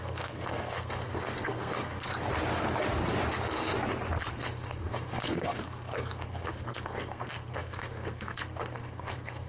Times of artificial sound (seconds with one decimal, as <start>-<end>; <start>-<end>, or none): 0.0-2.1; 4.3-9.5